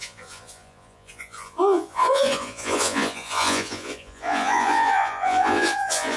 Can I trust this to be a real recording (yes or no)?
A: no